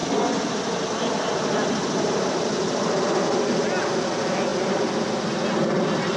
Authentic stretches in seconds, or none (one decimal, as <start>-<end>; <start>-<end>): 0.0-6.2